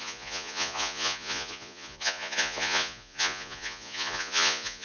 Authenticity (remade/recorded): remade